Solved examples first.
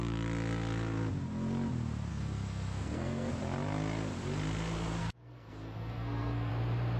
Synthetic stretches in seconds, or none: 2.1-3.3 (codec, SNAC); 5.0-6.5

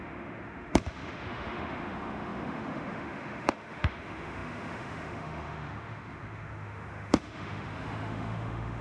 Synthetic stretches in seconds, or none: 0.0-8.8 (autoencoder, DAC-VAE)